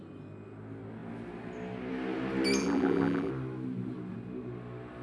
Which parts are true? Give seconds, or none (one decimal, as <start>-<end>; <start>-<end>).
0.0-2.6; 3.3-5.0